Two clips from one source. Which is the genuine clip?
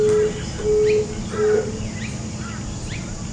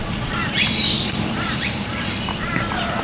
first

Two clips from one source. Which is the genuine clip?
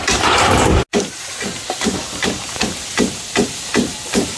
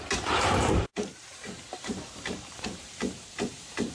first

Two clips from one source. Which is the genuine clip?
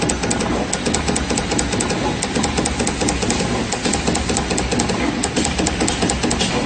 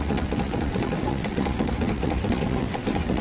first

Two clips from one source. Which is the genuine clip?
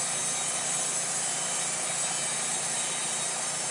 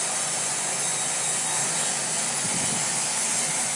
first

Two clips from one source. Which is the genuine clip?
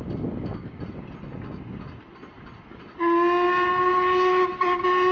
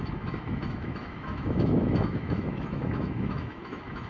first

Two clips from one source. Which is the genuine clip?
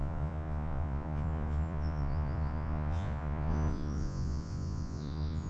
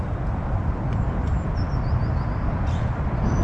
second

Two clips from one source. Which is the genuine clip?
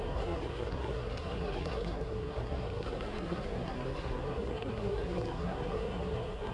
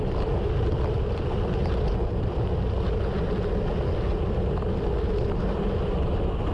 second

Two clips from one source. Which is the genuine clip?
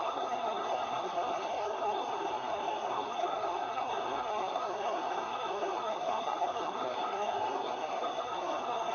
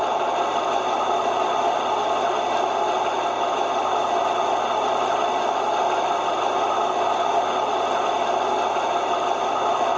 second